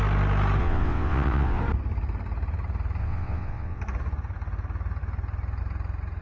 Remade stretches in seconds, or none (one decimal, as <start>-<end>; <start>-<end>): 0.6-1.6; 3.0-3.8